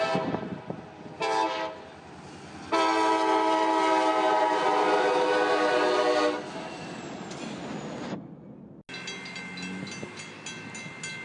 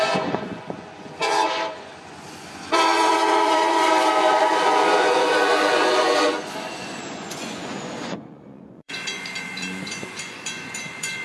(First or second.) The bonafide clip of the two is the first